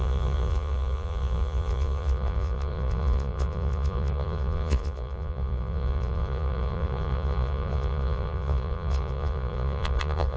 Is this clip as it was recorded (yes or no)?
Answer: no